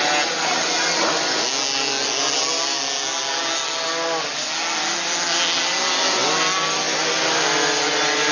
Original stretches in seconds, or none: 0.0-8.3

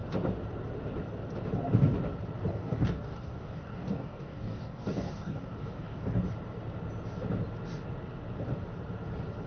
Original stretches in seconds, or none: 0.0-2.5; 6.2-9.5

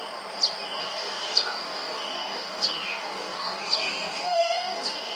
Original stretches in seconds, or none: 0.0-0.8